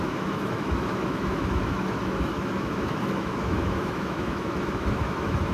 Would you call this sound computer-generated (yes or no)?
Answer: yes